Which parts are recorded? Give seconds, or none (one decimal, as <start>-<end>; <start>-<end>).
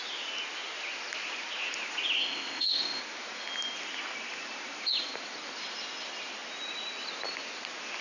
0.0-2.2; 3.0-8.0